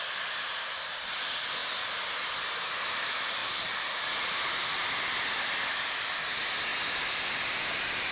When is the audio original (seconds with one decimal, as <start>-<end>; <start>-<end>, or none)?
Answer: 0.0-1.6; 2.4-3.4; 6.2-6.7; 7.6-8.1

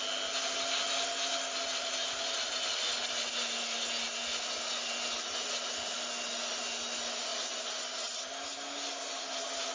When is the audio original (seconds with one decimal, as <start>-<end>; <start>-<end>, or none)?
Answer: 0.0-9.7

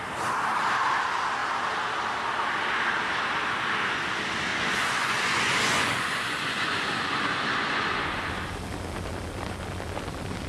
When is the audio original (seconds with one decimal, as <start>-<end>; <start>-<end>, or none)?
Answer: 0.0-4.5; 8.3-10.5